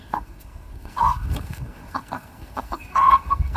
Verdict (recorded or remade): remade